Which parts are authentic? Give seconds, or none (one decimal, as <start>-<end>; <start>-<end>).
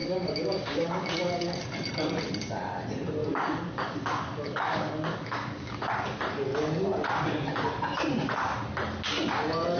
1.6-3.2; 5.9-9.8